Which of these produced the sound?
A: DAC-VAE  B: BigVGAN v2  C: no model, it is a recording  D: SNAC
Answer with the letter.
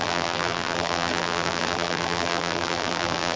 B